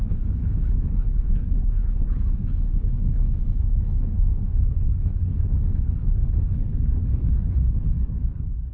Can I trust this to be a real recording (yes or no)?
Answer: no